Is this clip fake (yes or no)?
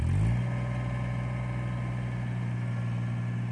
no